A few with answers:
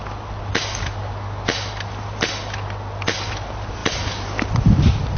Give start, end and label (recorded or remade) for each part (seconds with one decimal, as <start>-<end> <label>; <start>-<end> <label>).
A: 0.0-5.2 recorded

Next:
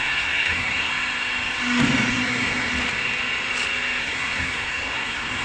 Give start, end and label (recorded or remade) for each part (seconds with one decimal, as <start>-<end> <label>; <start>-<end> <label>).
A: 0.0-0.9 remade; 0.9-2.1 recorded; 2.1-2.7 remade; 2.7-4.0 recorded; 4.0-5.4 remade

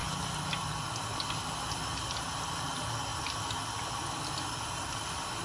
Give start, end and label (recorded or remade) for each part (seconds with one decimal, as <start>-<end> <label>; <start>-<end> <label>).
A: 0.0-5.4 recorded

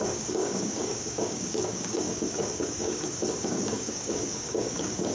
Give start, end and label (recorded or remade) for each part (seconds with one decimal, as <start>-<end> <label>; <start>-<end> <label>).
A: 0.0-5.1 remade